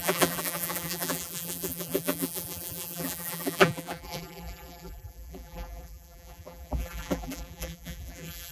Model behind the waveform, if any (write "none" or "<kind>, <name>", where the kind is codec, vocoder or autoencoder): vocoder, BigVGAN v2